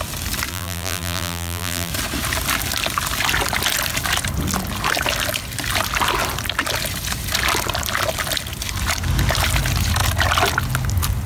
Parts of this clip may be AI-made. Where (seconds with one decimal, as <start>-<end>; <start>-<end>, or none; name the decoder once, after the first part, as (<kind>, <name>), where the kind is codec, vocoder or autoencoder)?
0.5-1.9 (vocoder, BigVGAN v2)